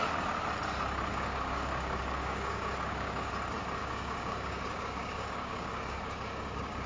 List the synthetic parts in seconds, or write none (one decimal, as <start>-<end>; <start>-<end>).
1.1-3.3; 3.8-6.9